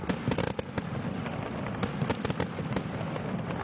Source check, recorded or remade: recorded